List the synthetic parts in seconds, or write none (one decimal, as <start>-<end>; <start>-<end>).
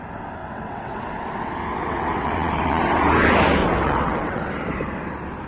0.4-1.1; 1.7-2.8; 3.6-4.5